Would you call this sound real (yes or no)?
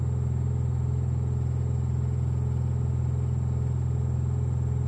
yes